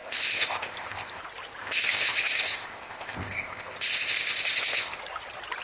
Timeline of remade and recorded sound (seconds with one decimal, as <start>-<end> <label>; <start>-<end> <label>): 0.0-1.2 remade; 1.2-1.6 recorded; 1.6-5.0 remade; 5.0-5.6 recorded